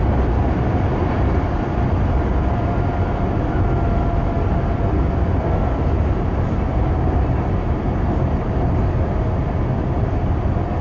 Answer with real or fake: real